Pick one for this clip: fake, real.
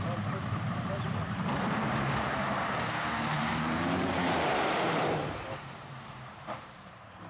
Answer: fake